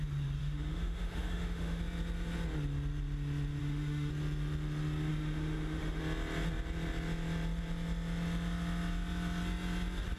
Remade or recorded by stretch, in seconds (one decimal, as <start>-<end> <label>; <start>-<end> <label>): 0.0-0.4 recorded; 0.4-1.8 remade; 1.8-3.6 recorded; 3.6-4.1 remade; 4.1-5.1 recorded; 5.1-6.0 remade; 6.0-10.2 recorded